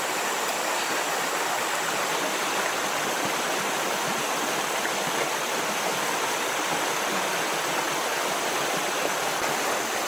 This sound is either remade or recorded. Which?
recorded